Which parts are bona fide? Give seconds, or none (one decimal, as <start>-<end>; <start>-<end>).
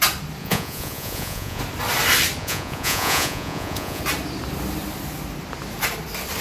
0.0-0.4; 1.6-2.4; 4.0-6.4